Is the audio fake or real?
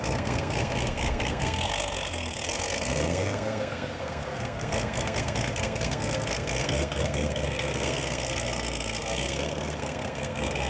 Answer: fake